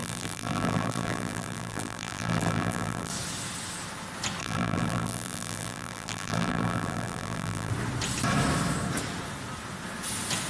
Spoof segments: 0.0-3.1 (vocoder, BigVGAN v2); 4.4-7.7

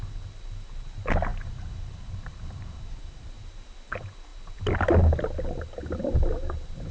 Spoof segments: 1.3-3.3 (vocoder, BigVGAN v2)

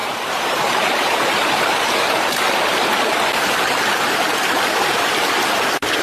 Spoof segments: 0.0-2.4 (vocoder, BigVGAN v2)